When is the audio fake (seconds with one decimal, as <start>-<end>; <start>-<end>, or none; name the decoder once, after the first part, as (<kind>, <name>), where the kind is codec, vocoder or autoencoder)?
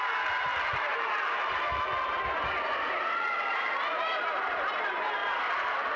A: 0.5-3.7 (vocoder, BigVGAN v2); 5.2-6.0